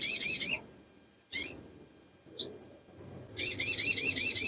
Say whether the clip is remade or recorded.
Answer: recorded